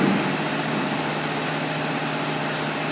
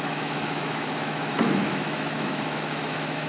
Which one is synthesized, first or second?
second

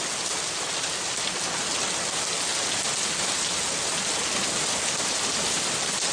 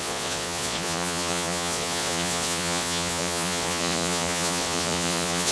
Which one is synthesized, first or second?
second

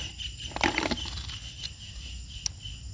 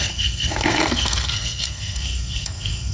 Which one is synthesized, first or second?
second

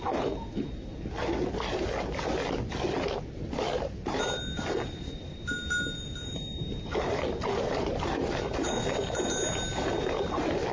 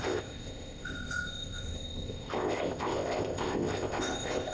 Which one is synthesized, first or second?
second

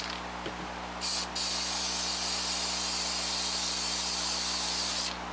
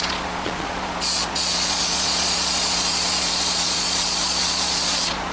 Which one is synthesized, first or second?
second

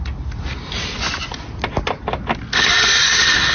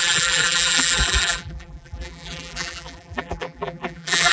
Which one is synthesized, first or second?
second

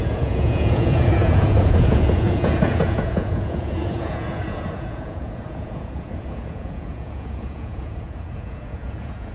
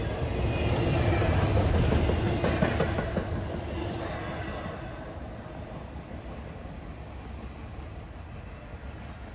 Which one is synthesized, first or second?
first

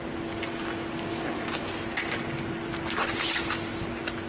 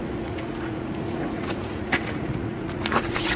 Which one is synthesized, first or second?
second